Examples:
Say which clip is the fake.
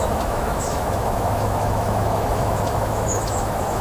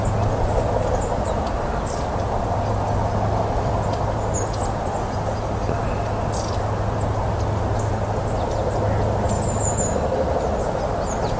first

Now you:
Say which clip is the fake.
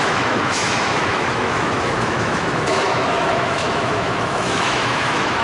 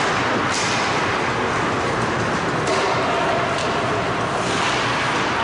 first